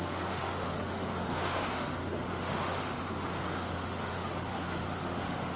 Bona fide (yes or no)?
no